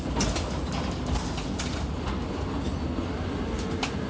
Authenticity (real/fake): real